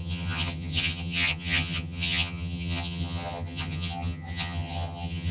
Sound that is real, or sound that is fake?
fake